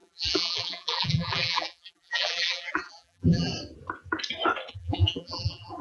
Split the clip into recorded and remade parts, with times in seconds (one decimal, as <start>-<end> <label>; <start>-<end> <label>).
0.0-3.5 remade; 3.5-4.7 recorded; 4.7-5.8 remade